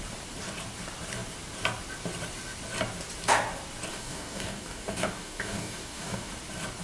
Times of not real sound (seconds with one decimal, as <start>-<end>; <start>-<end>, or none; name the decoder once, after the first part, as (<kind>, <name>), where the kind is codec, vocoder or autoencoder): 3.9-6.3 (codec, DAC)